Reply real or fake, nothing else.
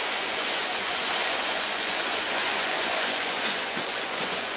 fake